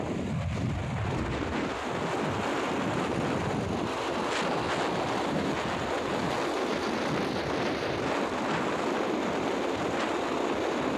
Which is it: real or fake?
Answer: real